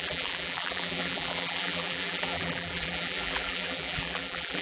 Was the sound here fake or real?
fake